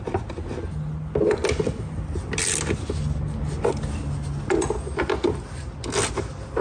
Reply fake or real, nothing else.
real